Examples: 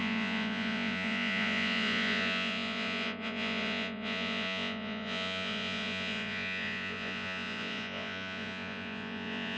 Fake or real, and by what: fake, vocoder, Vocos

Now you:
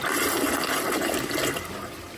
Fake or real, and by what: real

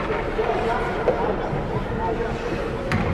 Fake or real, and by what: real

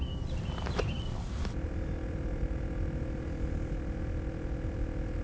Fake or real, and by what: real